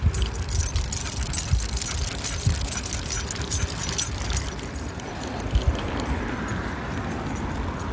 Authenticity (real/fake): real